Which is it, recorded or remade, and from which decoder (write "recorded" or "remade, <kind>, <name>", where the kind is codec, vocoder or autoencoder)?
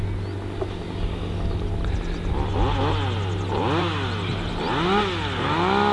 recorded